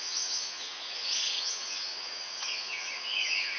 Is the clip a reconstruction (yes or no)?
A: yes